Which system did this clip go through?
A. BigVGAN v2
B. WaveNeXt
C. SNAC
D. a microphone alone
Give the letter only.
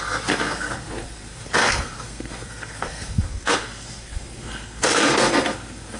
C